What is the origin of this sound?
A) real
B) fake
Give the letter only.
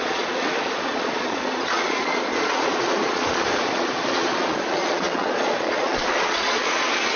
B